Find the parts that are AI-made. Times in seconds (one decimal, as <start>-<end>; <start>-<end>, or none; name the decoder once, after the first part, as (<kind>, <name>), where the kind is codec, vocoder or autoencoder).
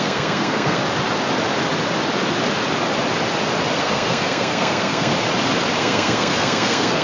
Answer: 0.0-0.8 (codec, SNAC); 3.8-5.1; 5.8-7.0